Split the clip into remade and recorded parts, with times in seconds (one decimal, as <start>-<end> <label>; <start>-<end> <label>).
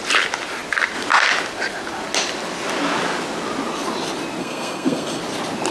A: 0.0-4.4 recorded; 4.4-5.2 remade; 5.2-5.7 recorded